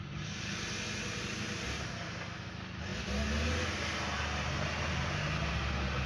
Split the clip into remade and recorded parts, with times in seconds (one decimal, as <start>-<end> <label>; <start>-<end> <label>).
0.0-6.1 recorded